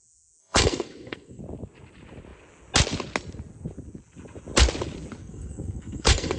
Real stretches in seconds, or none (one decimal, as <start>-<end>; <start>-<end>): 0.0-0.4; 1.4-5.2